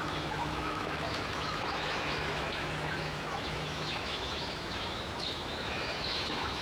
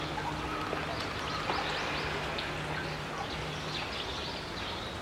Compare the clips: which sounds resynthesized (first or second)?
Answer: first